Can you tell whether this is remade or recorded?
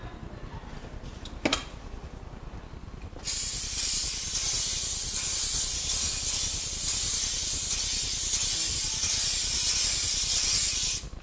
recorded